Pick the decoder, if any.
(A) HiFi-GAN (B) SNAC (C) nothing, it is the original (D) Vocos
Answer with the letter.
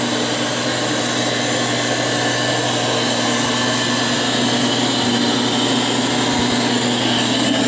C